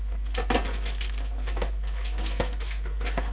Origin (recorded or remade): remade